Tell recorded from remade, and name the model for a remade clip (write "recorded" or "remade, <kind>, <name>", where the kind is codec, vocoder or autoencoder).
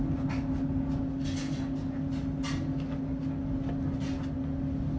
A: recorded